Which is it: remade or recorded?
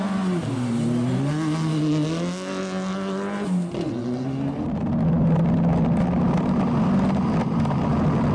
recorded